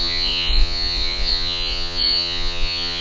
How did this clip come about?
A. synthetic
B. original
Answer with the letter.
A